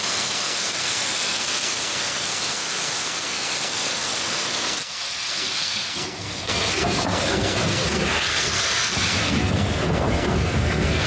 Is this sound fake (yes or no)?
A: yes